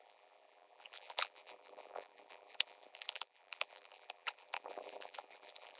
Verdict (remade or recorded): remade